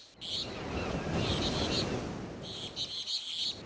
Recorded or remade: recorded